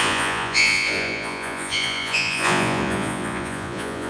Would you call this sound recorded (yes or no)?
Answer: no